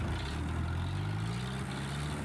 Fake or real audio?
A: real